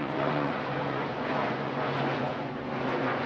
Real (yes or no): no